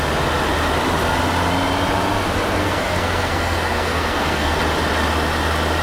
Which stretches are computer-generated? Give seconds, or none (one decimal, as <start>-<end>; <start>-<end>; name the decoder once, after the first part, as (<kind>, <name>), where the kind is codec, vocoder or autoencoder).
2.6-4.6 (codec, SNAC)